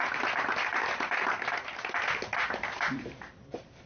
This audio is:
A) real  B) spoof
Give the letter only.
A